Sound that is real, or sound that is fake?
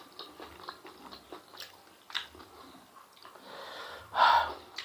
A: real